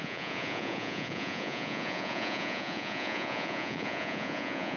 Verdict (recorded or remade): remade